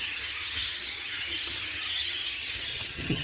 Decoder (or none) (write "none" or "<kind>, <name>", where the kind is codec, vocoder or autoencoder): vocoder, HiFi-GAN